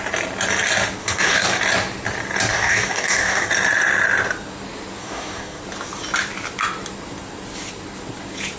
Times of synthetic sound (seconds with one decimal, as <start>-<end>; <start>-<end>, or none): 1.0-1.6; 2.5-3.5; 5.0-5.6